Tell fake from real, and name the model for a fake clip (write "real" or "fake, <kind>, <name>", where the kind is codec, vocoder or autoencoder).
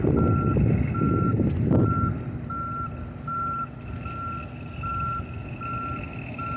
real